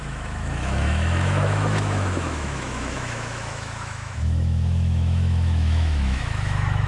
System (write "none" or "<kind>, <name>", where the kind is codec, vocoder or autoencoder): autoencoder, DAC-VAE